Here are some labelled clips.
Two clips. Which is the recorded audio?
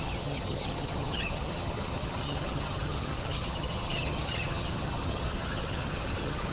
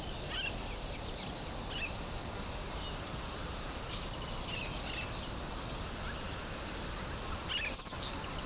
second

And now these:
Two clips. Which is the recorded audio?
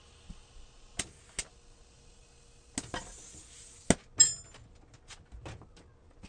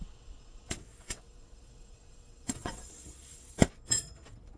first